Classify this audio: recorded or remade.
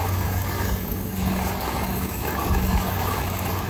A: remade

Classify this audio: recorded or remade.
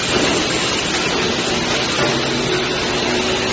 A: recorded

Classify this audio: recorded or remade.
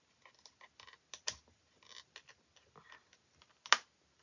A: recorded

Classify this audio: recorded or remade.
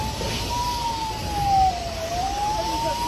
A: recorded